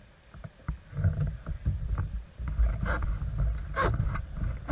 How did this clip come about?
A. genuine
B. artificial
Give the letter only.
A